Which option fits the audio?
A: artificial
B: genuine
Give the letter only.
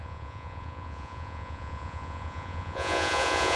A